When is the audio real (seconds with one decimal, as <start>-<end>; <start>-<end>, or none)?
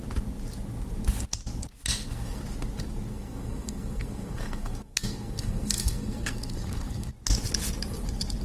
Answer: 0.0-1.9; 2.4-3.1; 7.1-8.4